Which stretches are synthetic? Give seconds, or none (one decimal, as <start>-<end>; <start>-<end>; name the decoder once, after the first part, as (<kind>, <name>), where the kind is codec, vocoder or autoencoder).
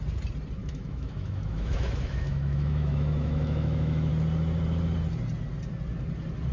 0.6-4.1 (autoencoder, DAC-VAE)